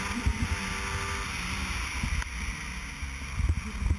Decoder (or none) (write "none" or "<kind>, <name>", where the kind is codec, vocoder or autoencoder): none